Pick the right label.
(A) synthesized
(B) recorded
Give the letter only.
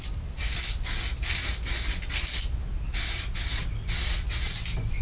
B